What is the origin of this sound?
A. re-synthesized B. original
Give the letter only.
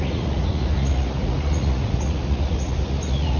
A